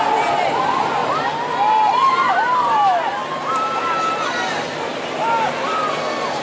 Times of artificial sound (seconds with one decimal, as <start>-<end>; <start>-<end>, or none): none